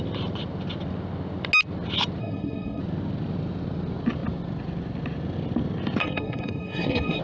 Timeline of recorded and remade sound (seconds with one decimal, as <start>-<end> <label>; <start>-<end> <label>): 0.0-2.2 recorded; 2.2-2.8 remade; 2.8-6.0 recorded; 6.0-7.2 remade